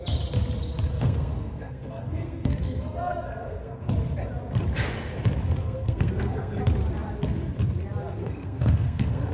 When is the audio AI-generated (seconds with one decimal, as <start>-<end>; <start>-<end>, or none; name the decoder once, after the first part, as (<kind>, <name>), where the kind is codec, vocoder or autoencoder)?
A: 0.9-3.9 (codec, SNAC); 5.6-6.6; 8.2-9.3